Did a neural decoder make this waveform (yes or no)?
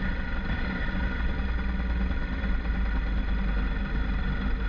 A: no